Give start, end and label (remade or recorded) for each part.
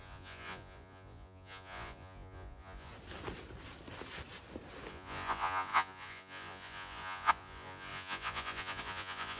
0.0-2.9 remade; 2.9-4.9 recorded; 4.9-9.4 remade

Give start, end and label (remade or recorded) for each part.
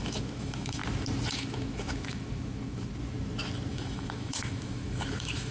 0.0-0.8 remade; 0.8-1.3 recorded; 1.3-2.9 remade; 2.9-3.7 recorded; 3.7-5.5 remade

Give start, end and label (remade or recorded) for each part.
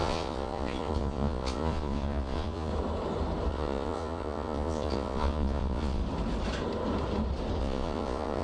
0.0-2.7 remade; 2.7-3.5 recorded; 3.5-6.0 remade; 6.0-7.6 recorded; 7.6-8.4 remade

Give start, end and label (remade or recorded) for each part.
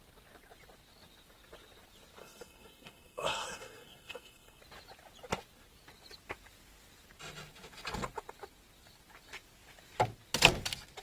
0.0-2.2 recorded; 2.2-4.6 remade; 4.6-11.0 recorded